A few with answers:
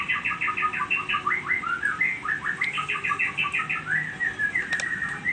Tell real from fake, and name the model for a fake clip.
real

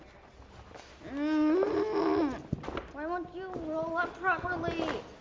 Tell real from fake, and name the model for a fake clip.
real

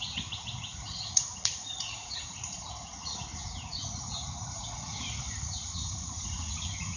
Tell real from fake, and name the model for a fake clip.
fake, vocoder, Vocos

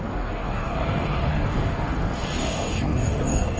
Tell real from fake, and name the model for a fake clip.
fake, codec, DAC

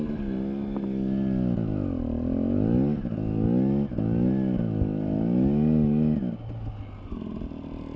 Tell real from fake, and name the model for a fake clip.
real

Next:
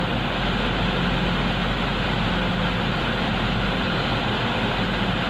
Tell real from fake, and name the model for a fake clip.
real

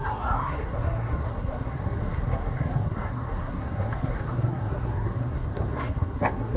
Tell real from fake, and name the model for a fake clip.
fake, codec, SNAC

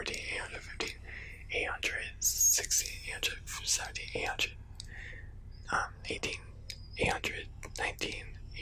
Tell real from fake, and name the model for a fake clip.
real